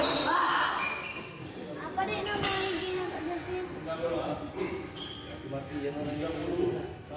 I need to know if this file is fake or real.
real